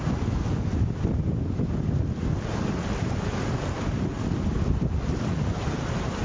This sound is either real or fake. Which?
real